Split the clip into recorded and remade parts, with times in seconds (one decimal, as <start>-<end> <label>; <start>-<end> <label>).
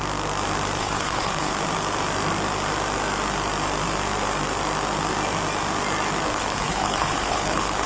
0.0-0.8 recorded; 0.8-1.5 remade; 1.5-6.3 recorded; 6.3-7.9 remade